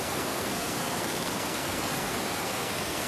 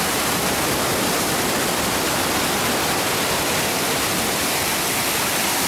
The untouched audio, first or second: second